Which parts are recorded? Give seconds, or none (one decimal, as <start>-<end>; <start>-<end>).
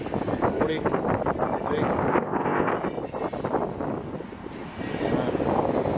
0.0-2.1; 2.7-6.0